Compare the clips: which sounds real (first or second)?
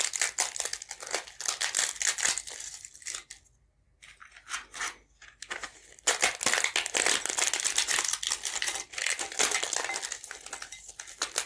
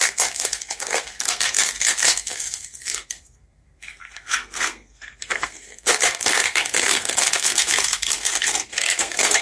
first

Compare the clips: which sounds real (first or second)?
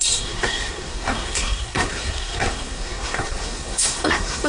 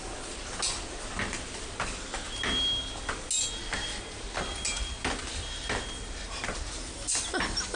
second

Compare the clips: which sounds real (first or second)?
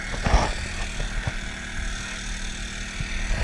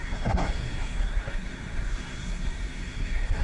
first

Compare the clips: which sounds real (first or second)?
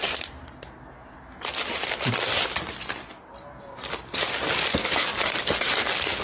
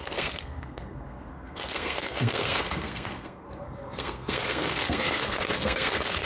first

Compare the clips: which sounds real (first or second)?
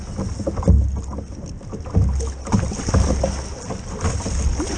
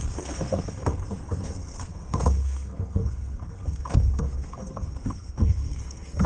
first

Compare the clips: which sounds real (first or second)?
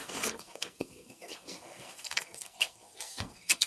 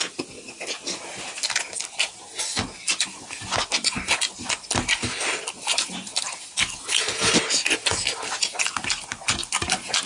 second